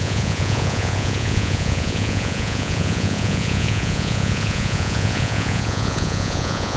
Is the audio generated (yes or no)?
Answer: yes